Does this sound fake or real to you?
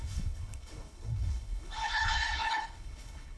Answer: fake